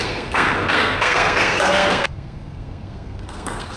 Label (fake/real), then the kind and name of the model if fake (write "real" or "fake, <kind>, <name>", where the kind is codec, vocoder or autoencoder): fake, codec, SNAC